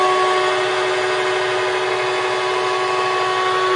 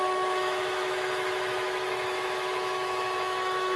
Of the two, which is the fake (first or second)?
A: second